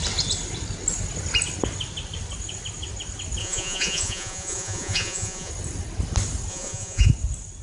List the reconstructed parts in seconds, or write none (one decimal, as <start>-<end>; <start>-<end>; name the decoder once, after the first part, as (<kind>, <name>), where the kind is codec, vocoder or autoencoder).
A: 3.4-5.5 (vocoder, Vocos); 6.5-7.1